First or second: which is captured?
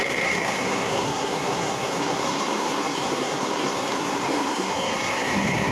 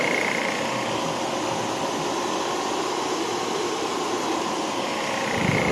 second